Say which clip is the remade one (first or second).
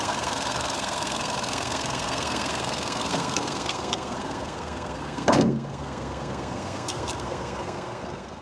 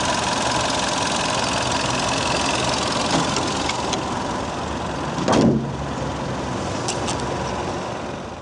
first